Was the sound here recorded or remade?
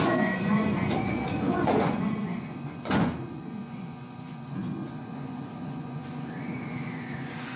remade